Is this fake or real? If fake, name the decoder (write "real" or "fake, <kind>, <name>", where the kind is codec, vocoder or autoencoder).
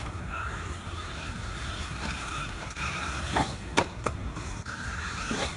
fake, codec, SNAC